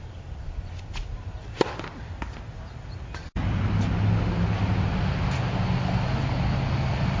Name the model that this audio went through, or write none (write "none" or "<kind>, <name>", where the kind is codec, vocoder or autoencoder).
none